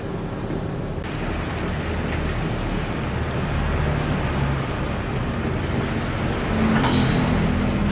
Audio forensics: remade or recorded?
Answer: recorded